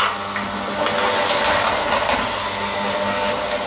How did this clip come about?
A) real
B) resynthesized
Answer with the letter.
A